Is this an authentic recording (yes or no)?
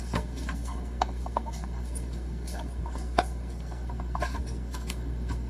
no